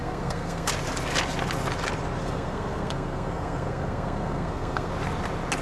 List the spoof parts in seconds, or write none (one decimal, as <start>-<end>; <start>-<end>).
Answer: 0.0-0.7; 2.2-4.9